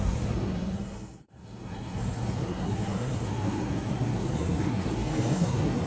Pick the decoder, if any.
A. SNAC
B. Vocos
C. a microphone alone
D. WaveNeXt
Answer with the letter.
A